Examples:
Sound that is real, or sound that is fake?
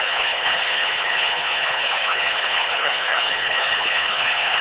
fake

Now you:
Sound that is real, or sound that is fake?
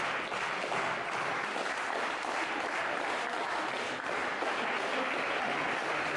real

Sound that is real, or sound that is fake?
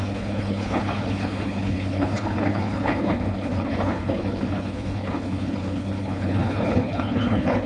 fake